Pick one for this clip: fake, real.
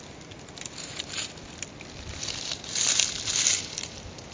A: real